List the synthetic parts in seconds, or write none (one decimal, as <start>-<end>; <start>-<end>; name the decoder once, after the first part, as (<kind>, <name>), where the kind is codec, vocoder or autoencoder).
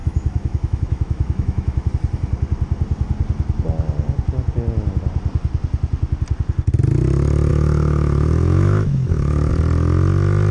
0.0-1.9 (autoencoder, DAC-VAE); 7.5-9.5